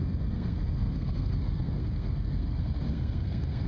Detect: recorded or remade remade